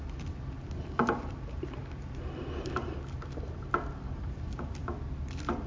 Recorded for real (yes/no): yes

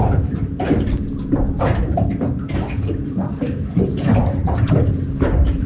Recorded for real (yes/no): no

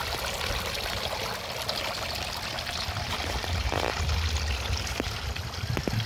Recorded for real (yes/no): yes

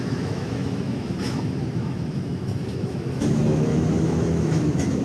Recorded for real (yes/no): no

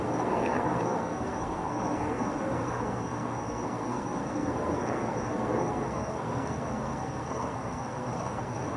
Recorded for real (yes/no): no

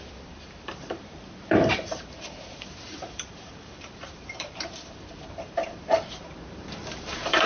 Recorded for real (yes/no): no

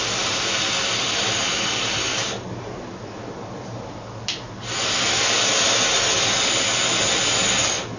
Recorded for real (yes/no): yes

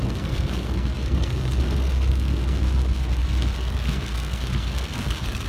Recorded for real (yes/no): no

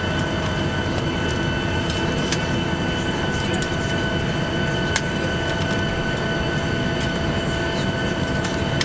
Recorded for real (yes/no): yes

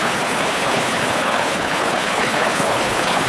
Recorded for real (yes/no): no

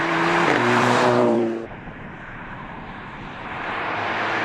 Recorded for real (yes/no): no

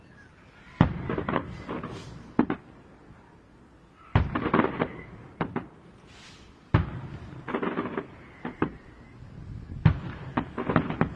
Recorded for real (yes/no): yes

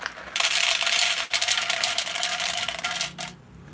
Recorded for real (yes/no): yes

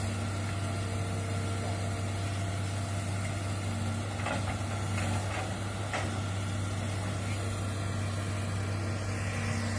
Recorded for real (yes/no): yes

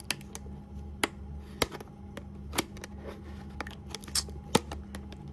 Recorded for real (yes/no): yes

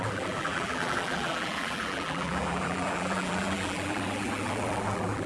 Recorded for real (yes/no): no